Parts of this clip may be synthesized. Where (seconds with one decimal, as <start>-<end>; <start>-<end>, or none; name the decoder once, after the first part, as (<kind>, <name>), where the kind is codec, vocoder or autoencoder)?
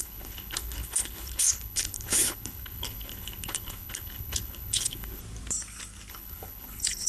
0.0-5.2 (codec, HILCodec); 6.1-7.1